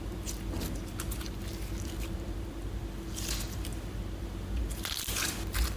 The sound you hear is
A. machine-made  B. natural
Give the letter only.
B